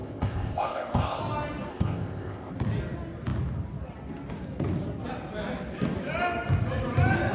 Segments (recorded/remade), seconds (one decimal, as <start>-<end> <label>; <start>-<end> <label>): 0.0-1.2 remade; 1.2-1.7 recorded; 1.7-2.5 remade; 2.5-7.3 recorded